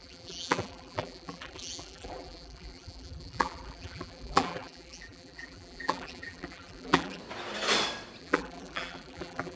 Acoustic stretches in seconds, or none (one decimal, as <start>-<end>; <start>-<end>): 7.2-8.2